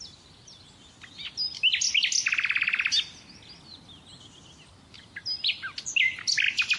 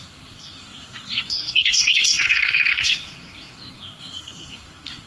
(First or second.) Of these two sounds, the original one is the first